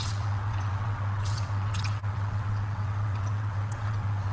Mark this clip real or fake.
fake